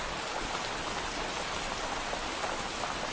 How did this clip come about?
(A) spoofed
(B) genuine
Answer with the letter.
B